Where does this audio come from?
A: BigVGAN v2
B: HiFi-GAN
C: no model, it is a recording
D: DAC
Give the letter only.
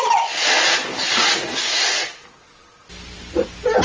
C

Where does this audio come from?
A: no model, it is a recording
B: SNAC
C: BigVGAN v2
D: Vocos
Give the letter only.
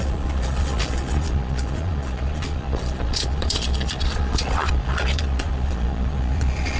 D